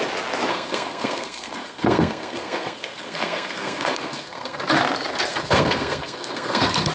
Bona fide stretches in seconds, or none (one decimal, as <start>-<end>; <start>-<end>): 0.0-0.5; 4.6-5.3